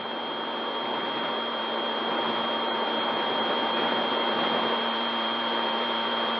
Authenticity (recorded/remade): remade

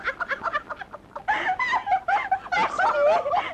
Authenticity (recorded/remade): recorded